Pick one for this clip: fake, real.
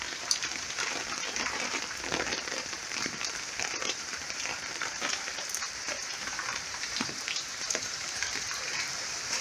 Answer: fake